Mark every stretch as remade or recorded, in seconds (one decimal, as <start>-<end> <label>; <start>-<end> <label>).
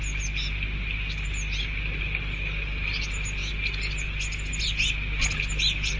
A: 0.0-6.0 recorded